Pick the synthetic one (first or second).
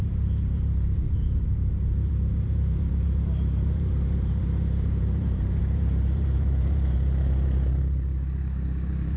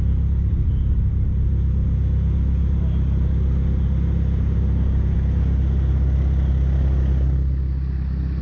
first